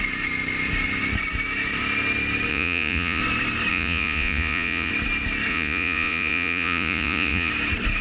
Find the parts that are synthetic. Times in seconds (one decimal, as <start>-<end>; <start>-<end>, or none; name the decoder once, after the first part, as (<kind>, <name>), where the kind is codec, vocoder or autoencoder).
2.5-3.2 (vocoder, Vocos); 3.7-4.9; 5.5-7.5